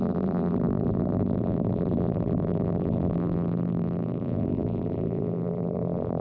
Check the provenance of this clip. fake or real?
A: fake